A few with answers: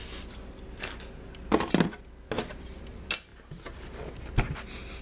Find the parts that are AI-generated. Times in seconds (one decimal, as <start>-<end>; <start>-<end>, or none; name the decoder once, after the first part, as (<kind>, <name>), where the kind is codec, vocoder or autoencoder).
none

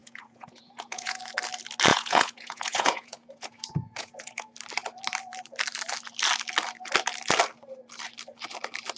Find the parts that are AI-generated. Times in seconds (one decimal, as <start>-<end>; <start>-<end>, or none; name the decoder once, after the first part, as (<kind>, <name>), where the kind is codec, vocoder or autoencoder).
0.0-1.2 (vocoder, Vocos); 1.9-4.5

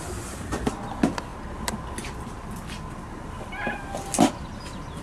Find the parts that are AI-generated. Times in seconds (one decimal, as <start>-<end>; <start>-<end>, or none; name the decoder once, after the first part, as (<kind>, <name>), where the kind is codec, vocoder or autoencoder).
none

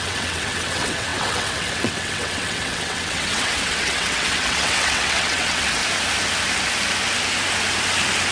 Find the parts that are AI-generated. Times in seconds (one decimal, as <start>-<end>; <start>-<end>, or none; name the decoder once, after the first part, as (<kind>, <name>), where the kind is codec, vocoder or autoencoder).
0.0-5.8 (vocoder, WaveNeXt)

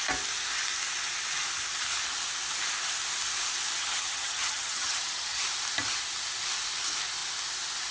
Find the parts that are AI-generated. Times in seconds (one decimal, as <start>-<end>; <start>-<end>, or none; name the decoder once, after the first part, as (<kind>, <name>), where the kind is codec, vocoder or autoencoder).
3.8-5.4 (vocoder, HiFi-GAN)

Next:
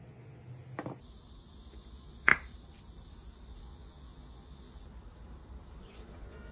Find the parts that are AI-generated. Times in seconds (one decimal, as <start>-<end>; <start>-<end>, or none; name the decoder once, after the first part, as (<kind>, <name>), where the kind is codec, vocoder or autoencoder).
0.0-0.4 (vocoder, Vocos); 1.7-2.3; 3.6-4.8; 5.8-6.5

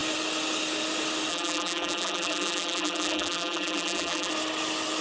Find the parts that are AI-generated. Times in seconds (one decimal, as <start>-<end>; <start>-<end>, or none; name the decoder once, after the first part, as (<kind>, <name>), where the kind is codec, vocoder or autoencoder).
1.3-4.3 (vocoder, BigVGAN v2)

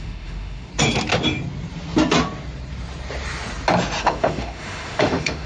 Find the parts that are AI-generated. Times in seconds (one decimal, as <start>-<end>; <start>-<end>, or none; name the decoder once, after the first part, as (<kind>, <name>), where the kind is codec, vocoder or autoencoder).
0.0-0.7 (autoencoder, DAC-VAE); 4.0-5.5